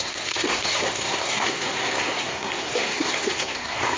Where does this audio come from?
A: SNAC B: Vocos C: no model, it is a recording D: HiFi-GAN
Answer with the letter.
A